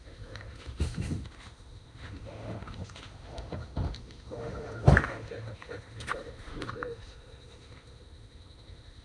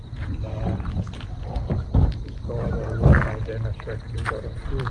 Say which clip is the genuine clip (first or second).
second